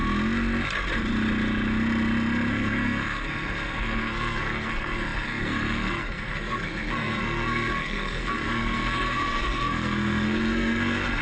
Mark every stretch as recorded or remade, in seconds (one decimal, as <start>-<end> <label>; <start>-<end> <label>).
0.0-2.5 recorded; 2.5-11.2 remade